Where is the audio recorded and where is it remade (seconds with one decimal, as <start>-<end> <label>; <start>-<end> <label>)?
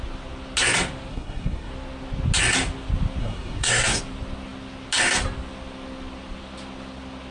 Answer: 0.0-1.1 recorded; 1.1-1.7 remade; 1.7-3.2 recorded; 3.2-4.0 remade; 4.0-7.3 recorded